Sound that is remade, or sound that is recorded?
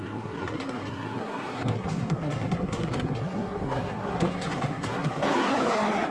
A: remade